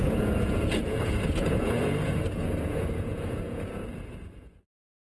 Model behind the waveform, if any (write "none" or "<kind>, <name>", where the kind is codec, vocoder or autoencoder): vocoder, Vocos